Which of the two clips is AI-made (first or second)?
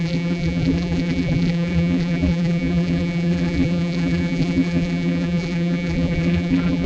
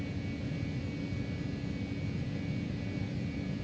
first